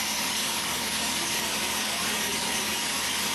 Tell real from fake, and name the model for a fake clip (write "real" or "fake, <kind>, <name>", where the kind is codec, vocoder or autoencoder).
fake, codec, DAC